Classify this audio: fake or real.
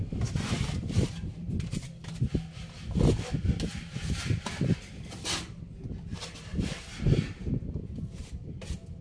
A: real